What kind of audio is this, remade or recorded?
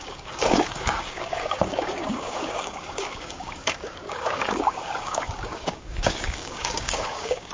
remade